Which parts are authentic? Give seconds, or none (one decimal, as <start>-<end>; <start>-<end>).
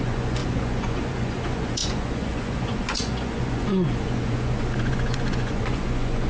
none